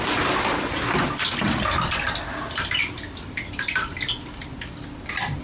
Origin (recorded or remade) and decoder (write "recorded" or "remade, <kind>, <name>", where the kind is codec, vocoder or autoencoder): recorded